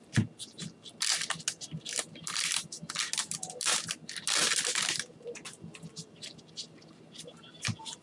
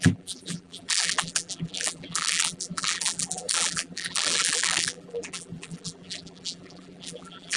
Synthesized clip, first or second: second